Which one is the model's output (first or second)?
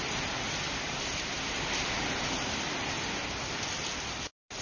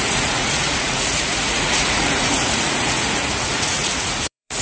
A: second